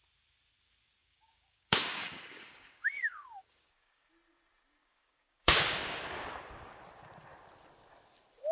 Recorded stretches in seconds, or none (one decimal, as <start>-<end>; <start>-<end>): 0.0-1.0; 4.1-4.8; 6.0-8.5